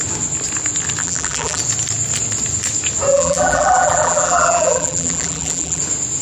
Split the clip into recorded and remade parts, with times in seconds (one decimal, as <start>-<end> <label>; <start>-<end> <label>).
0.0-1.0 recorded; 1.0-1.6 remade; 1.6-3.1 recorded; 3.1-5.8 remade; 5.8-6.2 recorded